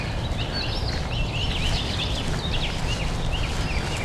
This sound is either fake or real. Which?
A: real